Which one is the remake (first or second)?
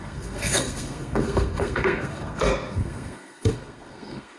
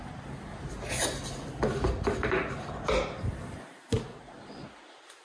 first